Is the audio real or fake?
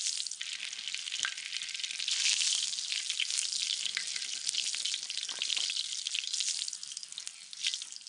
real